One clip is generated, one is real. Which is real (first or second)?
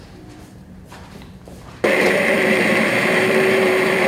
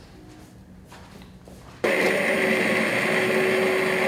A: second